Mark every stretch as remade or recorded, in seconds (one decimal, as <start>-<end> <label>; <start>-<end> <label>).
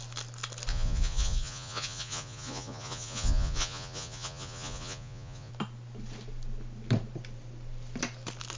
0.0-0.7 recorded; 0.7-5.5 remade; 5.5-8.6 recorded